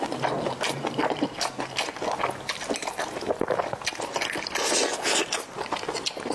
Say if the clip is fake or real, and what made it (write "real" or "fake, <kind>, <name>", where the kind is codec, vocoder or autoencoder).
real